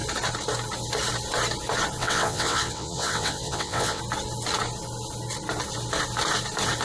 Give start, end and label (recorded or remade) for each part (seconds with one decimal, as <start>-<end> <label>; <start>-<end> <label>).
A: 0.0-2.0 recorded; 2.0-4.0 remade; 4.0-6.8 recorded